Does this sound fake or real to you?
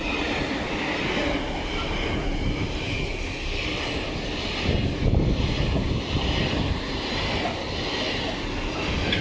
real